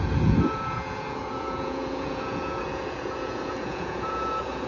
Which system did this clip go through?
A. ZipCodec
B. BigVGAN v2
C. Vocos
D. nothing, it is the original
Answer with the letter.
C